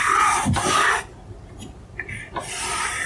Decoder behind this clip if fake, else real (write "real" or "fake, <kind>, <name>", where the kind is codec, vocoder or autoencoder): real